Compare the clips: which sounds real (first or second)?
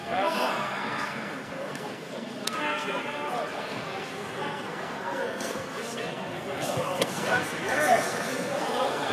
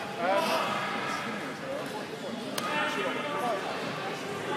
second